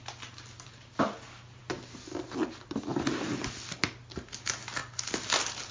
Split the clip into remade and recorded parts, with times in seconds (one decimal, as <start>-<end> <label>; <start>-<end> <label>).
0.0-5.7 recorded